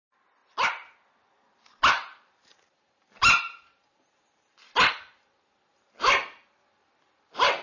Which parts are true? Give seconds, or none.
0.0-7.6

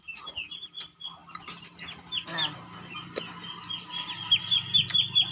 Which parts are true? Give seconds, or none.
0.0-5.3

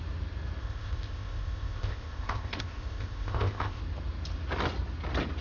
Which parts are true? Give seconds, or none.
0.0-0.6; 3.8-5.4

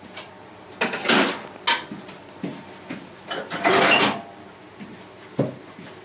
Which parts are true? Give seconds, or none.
0.0-6.0